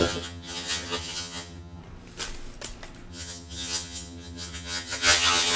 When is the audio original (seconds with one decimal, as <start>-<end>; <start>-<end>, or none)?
1.8-3.1